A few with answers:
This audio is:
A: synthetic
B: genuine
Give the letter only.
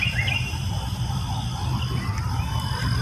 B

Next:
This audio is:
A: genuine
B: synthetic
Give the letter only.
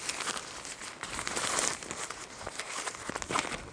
A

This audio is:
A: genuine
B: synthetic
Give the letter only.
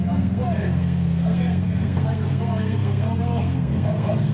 B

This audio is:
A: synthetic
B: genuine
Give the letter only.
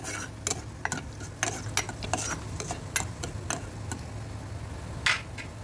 B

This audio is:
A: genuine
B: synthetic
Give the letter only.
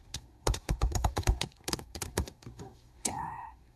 B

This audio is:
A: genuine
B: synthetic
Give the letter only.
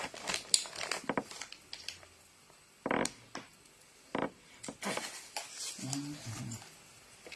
A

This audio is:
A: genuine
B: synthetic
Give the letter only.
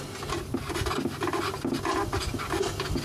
A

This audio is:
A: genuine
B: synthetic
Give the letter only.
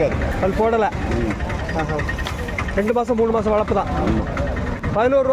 A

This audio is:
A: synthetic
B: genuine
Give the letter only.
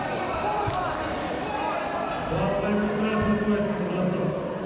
B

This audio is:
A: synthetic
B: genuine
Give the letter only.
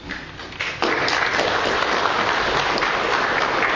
B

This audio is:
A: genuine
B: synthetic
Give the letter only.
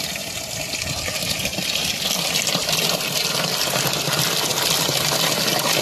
A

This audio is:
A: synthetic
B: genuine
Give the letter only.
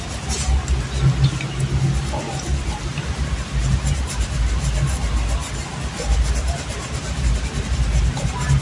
B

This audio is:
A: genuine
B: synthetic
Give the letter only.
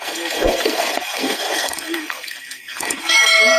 B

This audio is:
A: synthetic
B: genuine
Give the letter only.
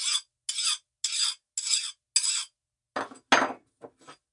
B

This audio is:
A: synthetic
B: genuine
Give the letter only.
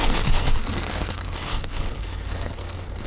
A